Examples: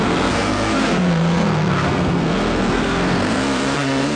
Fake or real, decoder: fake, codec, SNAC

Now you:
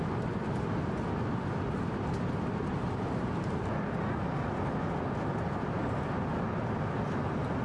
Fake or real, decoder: real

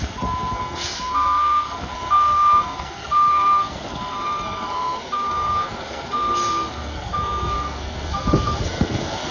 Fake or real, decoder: fake, codec, SNAC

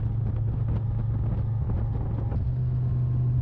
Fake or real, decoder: real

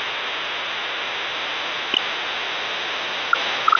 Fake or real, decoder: real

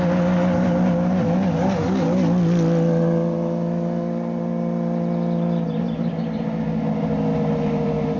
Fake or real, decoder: real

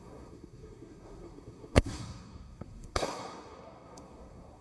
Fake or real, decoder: fake, codec, SNAC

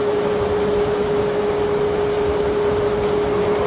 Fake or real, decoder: real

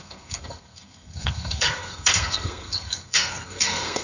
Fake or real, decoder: fake, codec, SNAC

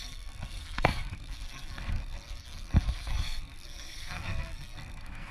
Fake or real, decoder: fake, codec, SNAC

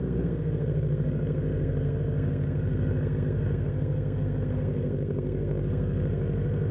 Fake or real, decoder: fake, codec, SNAC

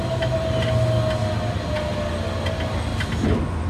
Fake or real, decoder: real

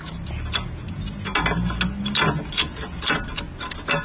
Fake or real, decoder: real